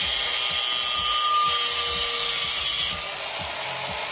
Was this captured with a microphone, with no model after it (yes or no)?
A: yes